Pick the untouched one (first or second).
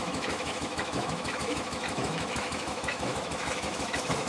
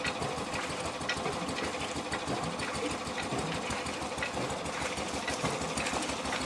second